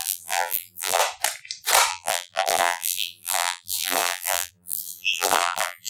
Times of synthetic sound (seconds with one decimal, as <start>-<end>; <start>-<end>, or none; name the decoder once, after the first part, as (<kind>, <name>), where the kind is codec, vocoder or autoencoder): 0.0-1.0 (vocoder, BigVGAN v2); 1.9-5.9